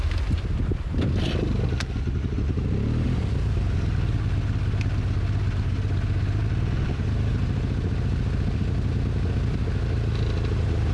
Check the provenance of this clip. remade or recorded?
recorded